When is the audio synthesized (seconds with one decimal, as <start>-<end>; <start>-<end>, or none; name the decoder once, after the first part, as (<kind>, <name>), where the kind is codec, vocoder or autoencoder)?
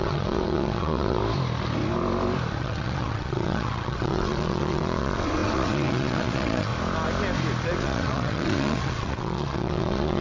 0.0-1.2 (vocoder, WaveNeXt); 2.6-6.7; 7.8-10.2